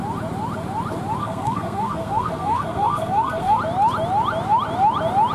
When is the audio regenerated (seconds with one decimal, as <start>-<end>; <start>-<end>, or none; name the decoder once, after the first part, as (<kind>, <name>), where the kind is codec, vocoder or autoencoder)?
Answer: 1.2-3.6 (codec, SNAC)